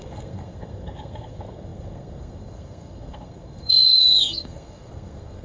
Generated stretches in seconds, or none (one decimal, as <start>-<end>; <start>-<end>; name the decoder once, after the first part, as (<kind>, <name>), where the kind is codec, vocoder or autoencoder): 0.0-5.4 (codec, SNAC)